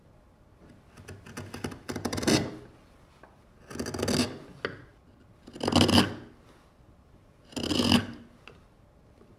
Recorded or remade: recorded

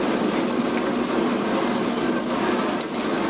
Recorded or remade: recorded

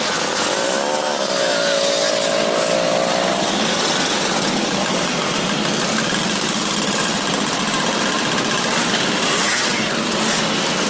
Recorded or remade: recorded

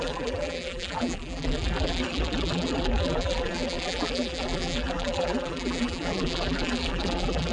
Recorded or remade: remade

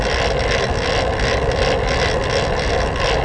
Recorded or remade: recorded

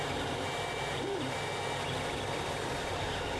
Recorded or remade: recorded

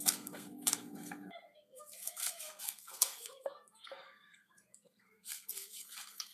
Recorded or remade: remade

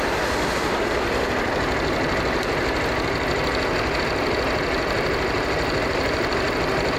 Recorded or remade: recorded